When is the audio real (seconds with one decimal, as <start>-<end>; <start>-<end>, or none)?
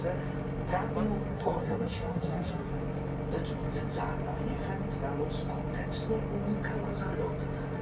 0.0-1.3; 2.7-7.8